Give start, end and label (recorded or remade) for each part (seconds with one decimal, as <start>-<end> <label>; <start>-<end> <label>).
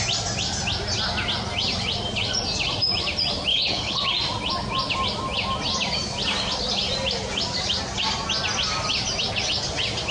0.0-3.5 recorded; 3.5-4.0 remade; 4.0-10.1 recorded